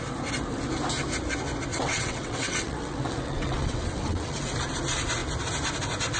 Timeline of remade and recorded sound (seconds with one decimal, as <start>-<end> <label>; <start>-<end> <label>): 0.0-1.7 recorded; 1.7-4.5 remade; 4.5-6.2 recorded